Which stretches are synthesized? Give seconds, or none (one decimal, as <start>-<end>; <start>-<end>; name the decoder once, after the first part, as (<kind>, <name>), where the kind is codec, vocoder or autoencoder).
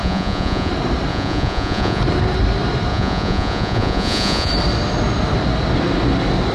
0.0-0.7 (vocoder, Vocos); 1.1-2.0; 2.9-4.5